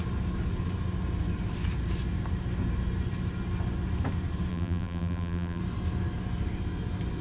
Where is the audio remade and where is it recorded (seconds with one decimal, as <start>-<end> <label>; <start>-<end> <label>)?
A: 0.0-4.5 recorded; 4.5-5.6 remade; 5.6-7.2 recorded